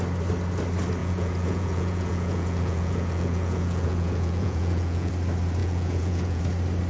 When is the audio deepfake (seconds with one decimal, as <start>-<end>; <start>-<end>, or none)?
1.0-5.1; 5.6-6.4